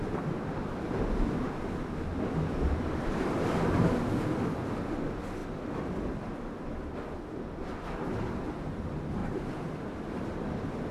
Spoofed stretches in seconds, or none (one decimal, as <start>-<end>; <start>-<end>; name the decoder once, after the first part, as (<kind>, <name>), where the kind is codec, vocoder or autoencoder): 9.2-10.1 (vocoder, BigVGAN v2)